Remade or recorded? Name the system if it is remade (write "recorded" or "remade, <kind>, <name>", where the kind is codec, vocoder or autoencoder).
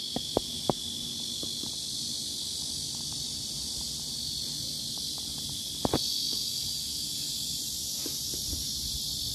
recorded